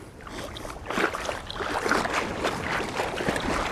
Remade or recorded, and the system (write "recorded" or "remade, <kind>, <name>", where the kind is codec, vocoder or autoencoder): recorded